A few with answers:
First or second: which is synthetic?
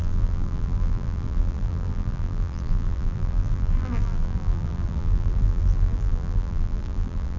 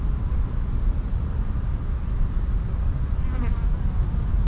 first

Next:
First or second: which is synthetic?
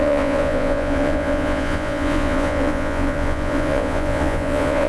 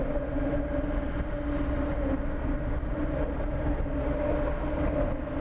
first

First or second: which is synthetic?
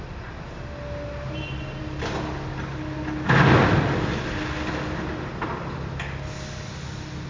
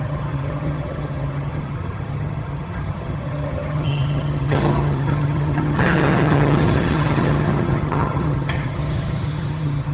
second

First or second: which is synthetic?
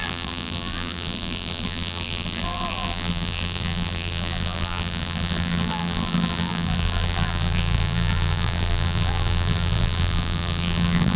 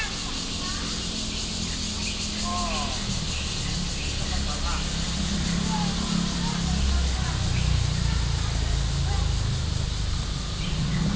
first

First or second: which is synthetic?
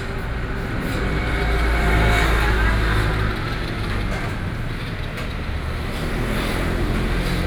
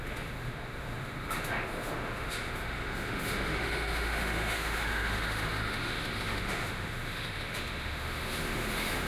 second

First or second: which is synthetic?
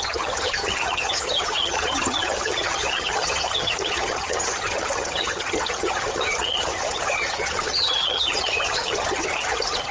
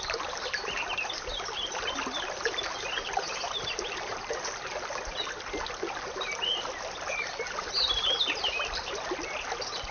first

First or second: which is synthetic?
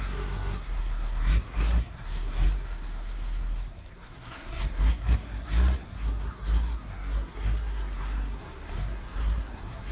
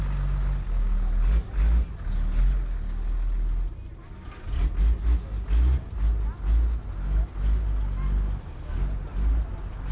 first